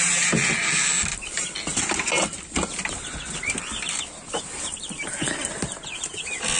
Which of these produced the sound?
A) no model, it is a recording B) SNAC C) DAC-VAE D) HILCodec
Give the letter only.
A